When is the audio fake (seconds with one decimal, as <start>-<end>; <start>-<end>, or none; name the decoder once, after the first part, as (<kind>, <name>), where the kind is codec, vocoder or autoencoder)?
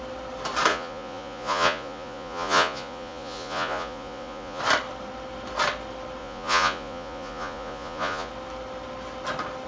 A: 0.7-4.6 (vocoder, Vocos); 6.2-8.3